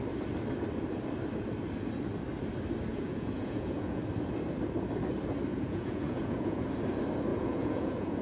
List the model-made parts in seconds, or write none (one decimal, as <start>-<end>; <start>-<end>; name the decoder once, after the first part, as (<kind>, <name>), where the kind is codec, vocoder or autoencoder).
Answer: 2.9-4.0 (vocoder, Vocos); 5.5-6.7; 7.3-8.2

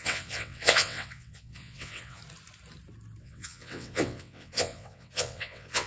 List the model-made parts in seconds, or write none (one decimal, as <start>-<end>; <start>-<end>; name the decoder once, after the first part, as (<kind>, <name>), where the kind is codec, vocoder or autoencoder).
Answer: 0.0-2.2 (vocoder, WaveNeXt); 3.2-5.9

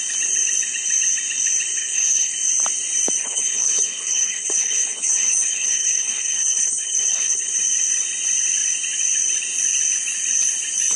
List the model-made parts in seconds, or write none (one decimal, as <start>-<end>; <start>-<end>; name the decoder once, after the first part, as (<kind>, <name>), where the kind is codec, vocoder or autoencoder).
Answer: 1.8-2.3 (codec, HILCodec); 3.2-7.5